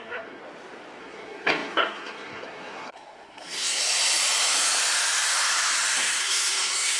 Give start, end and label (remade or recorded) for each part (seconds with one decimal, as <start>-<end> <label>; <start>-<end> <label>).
0.0-0.4 remade; 0.4-1.0 recorded; 1.0-3.8 remade; 3.8-6.2 recorded; 6.2-7.0 remade